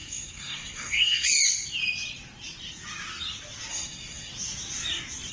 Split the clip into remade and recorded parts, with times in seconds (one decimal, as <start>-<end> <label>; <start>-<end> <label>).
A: 0.0-1.4 remade; 1.4-3.7 recorded; 3.7-4.3 remade; 4.3-5.3 recorded